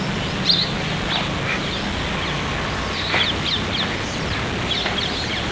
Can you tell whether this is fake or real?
real